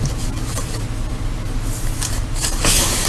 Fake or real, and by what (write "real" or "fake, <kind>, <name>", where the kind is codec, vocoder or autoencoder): real